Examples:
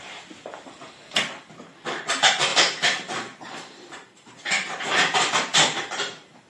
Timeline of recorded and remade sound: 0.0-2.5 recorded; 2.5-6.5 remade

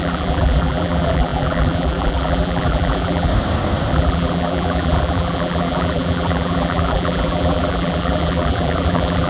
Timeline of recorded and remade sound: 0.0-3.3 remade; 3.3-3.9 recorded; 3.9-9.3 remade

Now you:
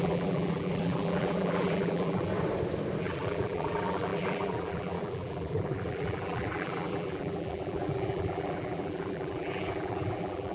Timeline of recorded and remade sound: 0.0-2.3 remade; 2.3-3.0 recorded; 3.0-10.5 remade

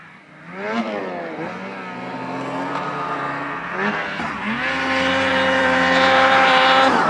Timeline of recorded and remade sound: 0.0-1.0 remade; 1.0-5.3 recorded; 5.3-7.1 remade